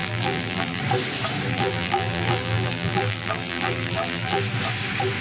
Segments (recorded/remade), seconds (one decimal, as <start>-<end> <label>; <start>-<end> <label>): 0.0-0.8 remade; 0.8-1.5 recorded; 1.5-4.4 remade; 4.4-5.2 recorded